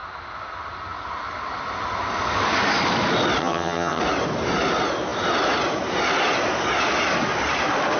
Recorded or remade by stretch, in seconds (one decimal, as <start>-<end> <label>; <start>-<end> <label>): 0.0-3.4 recorded; 3.4-4.0 remade; 4.0-8.0 recorded